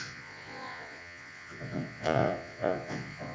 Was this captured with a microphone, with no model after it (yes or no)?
no